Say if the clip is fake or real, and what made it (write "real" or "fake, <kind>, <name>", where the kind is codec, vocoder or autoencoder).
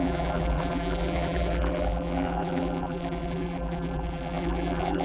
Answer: fake, vocoder, BigVGAN v2